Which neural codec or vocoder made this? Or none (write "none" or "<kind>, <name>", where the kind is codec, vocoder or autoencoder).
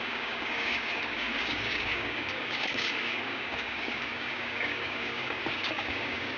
codec, DAC